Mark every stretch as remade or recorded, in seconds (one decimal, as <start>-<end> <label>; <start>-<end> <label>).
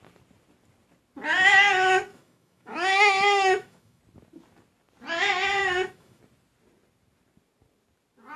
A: 0.0-2.1 recorded; 2.1-4.0 remade; 4.0-5.6 recorded; 5.6-6.2 remade; 6.2-8.4 recorded